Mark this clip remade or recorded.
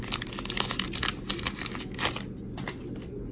recorded